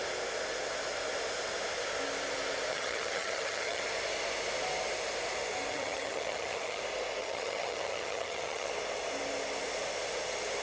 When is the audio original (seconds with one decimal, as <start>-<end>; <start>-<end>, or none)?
0.0-2.7; 3.8-5.7; 6.8-7.2; 8.7-10.6